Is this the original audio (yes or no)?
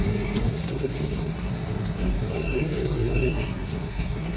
no